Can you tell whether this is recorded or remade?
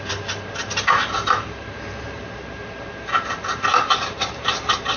remade